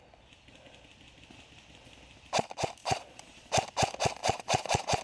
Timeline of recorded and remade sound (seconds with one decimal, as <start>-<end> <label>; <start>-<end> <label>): 0.0-2.8 recorded; 2.8-3.5 remade; 3.5-4.2 recorded; 4.2-5.0 remade